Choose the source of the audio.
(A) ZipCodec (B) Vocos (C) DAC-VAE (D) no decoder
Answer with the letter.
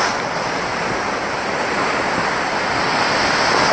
D